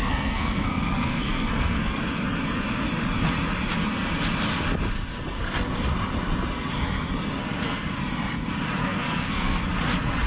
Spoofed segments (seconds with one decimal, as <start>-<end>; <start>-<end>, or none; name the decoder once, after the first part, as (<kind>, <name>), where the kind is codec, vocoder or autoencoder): 0.0-2.0 (codec, SNAC); 8.8-9.6